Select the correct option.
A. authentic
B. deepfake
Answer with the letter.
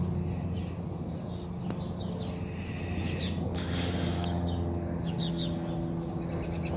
A